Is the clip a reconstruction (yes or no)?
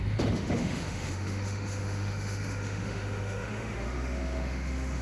yes